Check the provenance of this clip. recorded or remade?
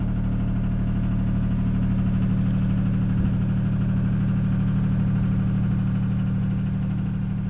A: recorded